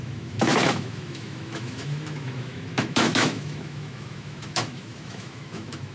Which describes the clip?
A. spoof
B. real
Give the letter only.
A